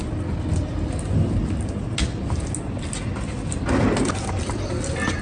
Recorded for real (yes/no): yes